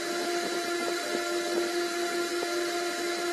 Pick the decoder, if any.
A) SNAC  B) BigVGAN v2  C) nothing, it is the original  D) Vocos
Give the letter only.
C